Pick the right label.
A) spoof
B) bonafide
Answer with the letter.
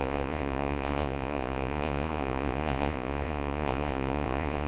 A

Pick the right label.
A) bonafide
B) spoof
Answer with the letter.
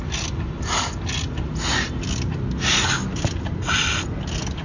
A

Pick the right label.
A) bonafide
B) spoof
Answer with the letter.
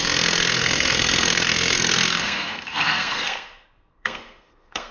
B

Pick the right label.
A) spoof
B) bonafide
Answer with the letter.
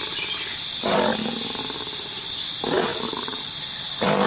B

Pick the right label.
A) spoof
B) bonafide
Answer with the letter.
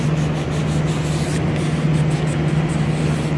B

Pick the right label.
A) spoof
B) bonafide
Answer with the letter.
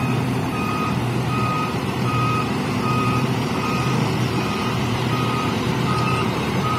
A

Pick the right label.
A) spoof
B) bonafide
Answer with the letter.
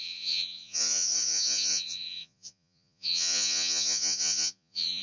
A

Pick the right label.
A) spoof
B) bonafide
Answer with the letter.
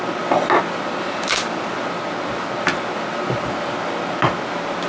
B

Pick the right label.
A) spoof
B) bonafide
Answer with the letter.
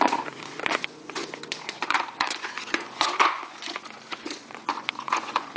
A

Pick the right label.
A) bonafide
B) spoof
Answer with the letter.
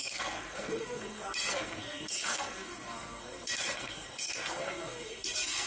B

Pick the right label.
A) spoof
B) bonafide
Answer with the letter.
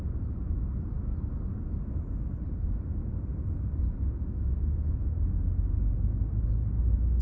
B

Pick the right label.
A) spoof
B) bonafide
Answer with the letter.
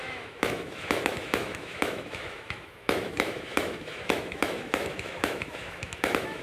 A